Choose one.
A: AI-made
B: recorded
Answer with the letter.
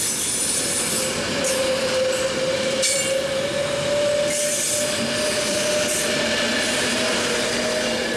B